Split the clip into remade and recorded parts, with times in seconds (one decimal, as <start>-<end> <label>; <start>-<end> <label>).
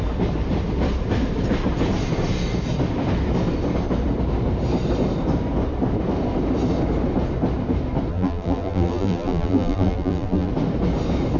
0.0-8.1 recorded; 8.1-10.5 remade; 10.5-11.4 recorded